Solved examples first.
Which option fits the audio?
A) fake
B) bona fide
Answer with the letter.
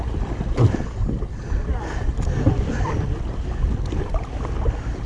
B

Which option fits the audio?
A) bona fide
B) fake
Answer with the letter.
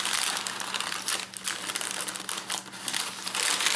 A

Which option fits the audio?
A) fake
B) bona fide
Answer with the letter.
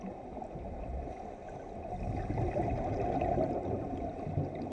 B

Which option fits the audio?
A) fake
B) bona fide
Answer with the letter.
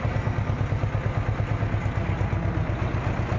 B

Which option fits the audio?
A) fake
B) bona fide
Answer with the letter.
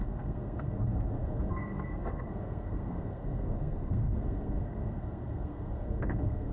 A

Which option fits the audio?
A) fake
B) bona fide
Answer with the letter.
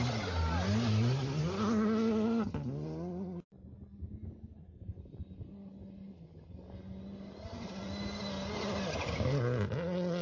B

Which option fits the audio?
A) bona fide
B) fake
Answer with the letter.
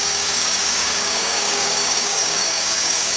B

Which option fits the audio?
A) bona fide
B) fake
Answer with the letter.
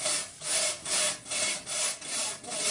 A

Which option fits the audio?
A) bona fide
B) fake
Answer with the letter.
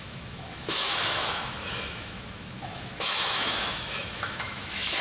B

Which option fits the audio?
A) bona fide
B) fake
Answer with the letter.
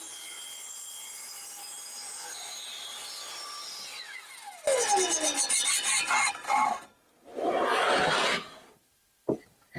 A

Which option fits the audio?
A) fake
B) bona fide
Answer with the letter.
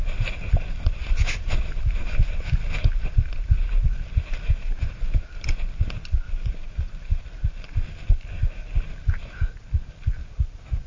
B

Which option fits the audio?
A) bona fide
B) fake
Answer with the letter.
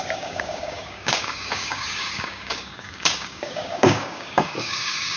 B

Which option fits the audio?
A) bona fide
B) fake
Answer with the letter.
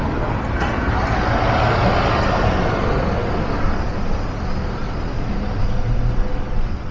A